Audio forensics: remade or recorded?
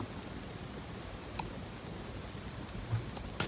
recorded